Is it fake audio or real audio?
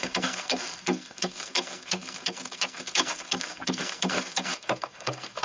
fake